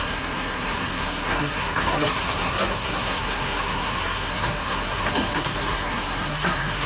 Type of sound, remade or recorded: remade